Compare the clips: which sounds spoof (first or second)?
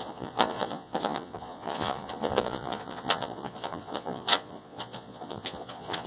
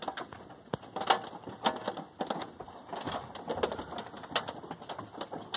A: first